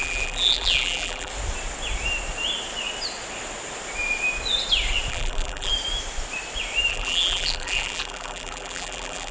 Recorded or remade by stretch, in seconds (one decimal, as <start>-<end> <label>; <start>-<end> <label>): 0.0-1.3 remade; 1.3-5.1 recorded; 5.1-5.7 remade; 5.7-6.9 recorded; 6.9-9.3 remade